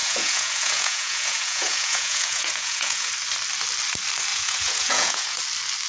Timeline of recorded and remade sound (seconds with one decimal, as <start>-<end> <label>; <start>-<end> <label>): 0.0-3.1 remade; 3.1-4.3 recorded; 4.3-5.4 remade; 5.4-5.9 recorded